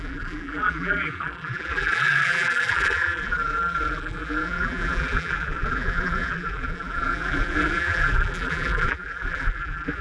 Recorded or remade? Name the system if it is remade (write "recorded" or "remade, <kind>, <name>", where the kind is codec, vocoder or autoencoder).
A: remade, vocoder, BigVGAN v2